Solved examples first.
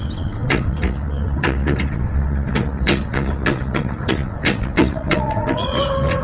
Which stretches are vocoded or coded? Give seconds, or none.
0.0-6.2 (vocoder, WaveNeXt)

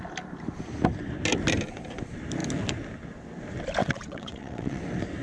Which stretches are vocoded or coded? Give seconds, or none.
3.8-4.8 (vocoder, WaveNeXt)

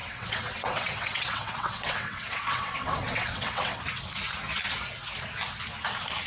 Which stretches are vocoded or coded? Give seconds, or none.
0.0-3.8 (vocoder, WaveNeXt)

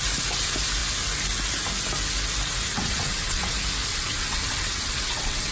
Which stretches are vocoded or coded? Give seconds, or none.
2.7-3.5 (vocoder, WaveNeXt); 3.9-5.5